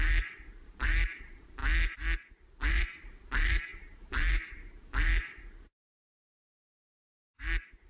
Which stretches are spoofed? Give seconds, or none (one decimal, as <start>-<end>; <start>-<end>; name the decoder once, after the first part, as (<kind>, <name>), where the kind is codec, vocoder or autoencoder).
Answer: 0.0-1.6 (vocoder, BigVGAN v2); 2.7-7.9